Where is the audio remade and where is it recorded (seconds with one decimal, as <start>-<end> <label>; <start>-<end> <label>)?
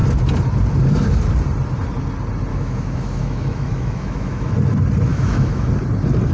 0.0-2.5 recorded; 2.5-4.5 remade; 4.5-5.1 recorded; 5.1-5.7 remade; 5.7-6.3 recorded